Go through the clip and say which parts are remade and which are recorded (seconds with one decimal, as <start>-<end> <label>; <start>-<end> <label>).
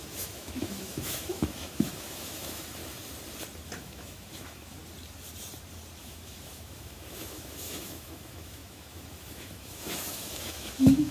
0.0-2.8 remade; 2.8-3.8 recorded; 3.8-4.8 remade; 4.8-6.0 recorded; 6.0-11.1 remade